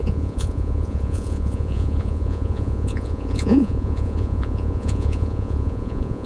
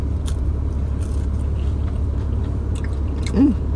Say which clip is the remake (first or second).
first